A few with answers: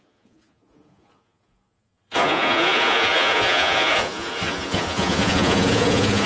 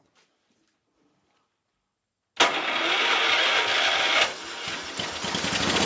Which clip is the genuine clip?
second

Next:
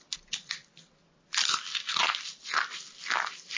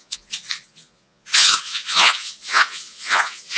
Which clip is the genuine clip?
first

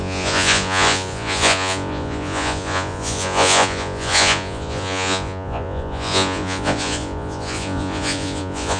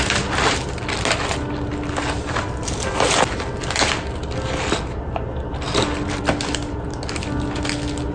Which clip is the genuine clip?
second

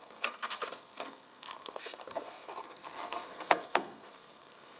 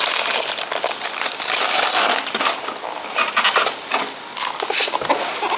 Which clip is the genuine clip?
second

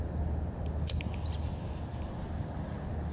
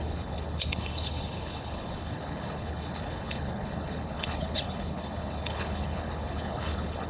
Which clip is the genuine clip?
first